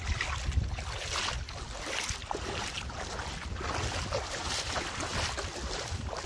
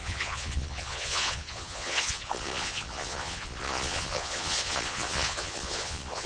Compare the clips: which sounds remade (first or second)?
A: second